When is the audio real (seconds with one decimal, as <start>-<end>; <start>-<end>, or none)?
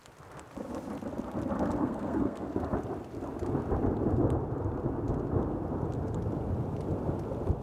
0.0-1.8; 2.5-7.6